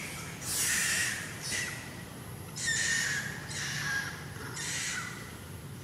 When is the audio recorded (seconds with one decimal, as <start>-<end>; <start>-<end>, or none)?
0.0-1.0; 2.8-3.4; 4.7-5.8